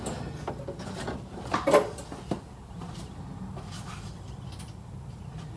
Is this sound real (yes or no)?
yes